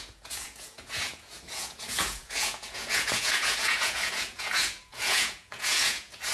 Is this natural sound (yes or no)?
no